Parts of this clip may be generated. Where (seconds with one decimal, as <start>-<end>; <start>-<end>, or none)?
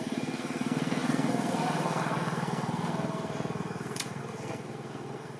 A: 0.0-5.4